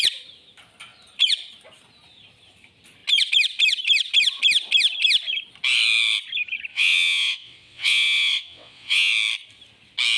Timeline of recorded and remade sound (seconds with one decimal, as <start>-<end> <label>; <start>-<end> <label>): 0.0-6.7 recorded; 6.7-9.1 remade; 9.1-10.2 recorded